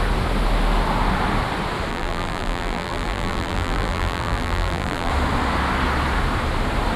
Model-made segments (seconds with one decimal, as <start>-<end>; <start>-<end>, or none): 1.9-5.1